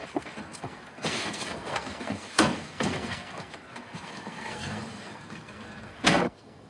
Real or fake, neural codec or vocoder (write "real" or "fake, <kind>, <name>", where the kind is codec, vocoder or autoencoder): fake, codec, SNAC